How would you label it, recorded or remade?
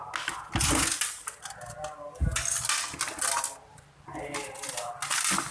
recorded